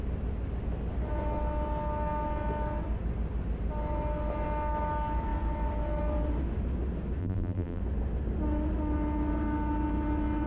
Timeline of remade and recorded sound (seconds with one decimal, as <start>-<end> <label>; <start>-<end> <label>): 0.0-7.2 recorded; 7.2-7.8 remade; 7.8-10.5 recorded